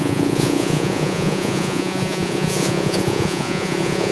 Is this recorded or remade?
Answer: remade